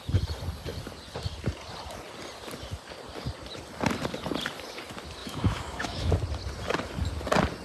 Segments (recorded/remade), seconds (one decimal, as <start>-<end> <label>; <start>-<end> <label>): 0.0-5.2 recorded; 5.2-6.1 remade; 6.1-7.6 recorded